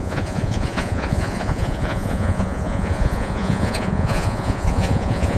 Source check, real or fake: fake